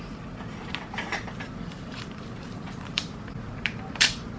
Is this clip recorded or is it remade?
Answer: remade